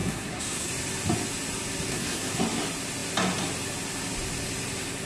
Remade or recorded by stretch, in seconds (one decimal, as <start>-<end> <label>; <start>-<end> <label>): 0.0-0.7 remade; 0.7-1.9 recorded; 1.9-2.4 remade; 2.4-5.1 recorded